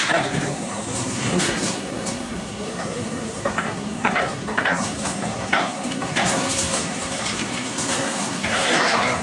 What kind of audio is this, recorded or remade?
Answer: remade